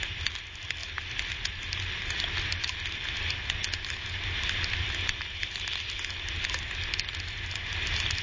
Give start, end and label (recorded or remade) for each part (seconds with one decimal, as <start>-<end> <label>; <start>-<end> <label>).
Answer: 0.0-8.2 recorded